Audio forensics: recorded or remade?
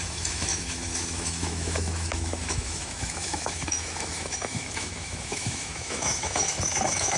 remade